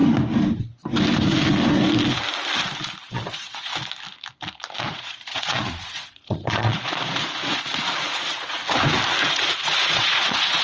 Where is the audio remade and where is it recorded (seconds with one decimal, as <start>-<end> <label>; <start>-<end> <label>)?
0.0-3.0 recorded; 3.0-3.7 remade; 3.7-4.8 recorded; 4.8-8.6 remade; 8.6-9.2 recorded; 9.2-10.6 remade